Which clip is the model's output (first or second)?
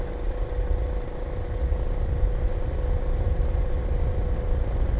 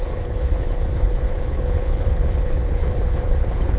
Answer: second